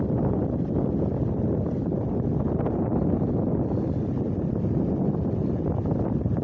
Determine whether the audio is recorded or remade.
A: recorded